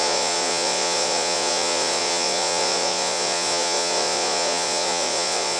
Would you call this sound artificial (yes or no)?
yes